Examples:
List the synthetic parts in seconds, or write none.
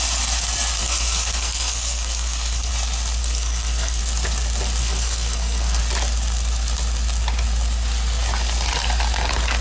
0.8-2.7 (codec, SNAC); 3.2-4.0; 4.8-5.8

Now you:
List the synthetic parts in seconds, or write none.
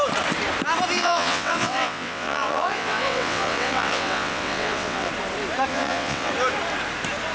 1.0-5.1 (vocoder, WaveNeXt); 5.7-6.3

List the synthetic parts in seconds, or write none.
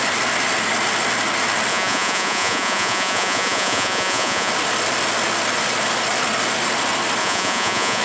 1.7-4.5 (vocoder, Vocos); 7.2-8.0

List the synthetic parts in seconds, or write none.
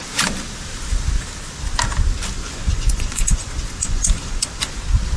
2.4-4.8 (vocoder, Vocos)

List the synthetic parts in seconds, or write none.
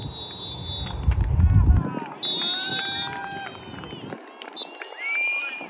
none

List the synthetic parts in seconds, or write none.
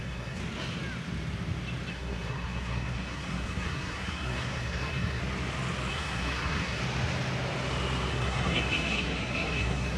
0.0-0.4 (codec, SNAC); 1.9-5.2; 5.9-6.8; 8.1-10.0